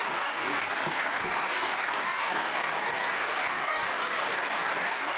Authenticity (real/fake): fake